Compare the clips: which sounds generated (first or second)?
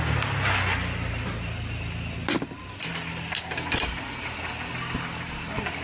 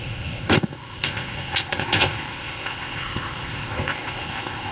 second